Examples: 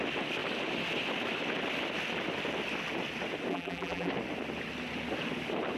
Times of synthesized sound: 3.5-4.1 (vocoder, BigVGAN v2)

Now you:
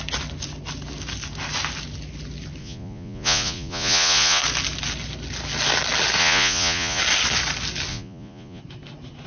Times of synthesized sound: 2.6-4.4 (vocoder, Vocos); 6.2-7.0; 7.9-8.6

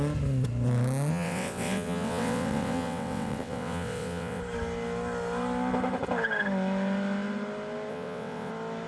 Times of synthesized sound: 1.1-4.4 (vocoder, WaveNeXt); 7.9-8.5

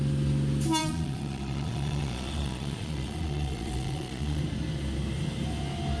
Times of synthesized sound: 0.8-4.4 (vocoder, Vocos)

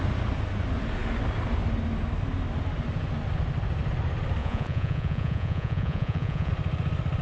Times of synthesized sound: 4.4-6.5 (vocoder, Vocos)